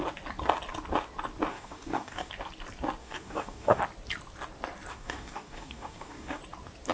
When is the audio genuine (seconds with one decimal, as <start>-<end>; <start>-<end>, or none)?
0.0-1.5; 2.3-3.0; 3.8-4.9; 6.4-6.9